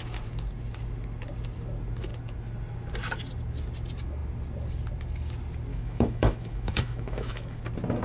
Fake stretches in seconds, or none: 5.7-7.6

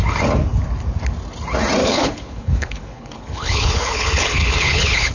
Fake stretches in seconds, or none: 1.8-5.1

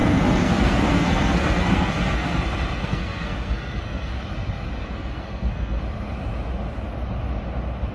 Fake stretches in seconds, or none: 0.0-2.4; 2.8-4.2; 4.8-5.8

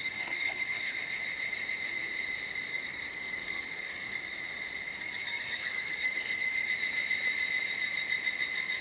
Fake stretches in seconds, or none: 0.0-0.9; 2.7-4.2; 5.2-6.7

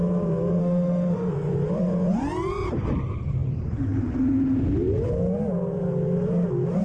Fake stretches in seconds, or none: 0.6-1.3

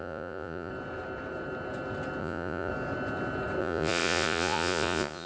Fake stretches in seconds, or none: 0.0-0.7; 2.2-2.7; 3.6-5.3